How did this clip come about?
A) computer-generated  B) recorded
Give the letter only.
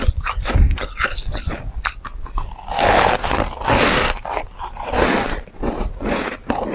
B